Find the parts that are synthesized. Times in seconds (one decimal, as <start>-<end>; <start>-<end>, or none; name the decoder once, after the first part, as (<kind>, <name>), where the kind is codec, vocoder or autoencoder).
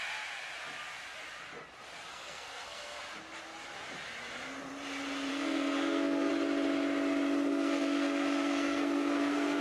2.1-3.0 (codec, SNAC); 5.3-6.3; 7.5-9.6